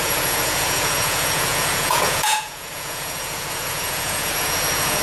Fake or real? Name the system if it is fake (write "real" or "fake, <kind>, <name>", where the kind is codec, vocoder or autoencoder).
fake, vocoder, Vocos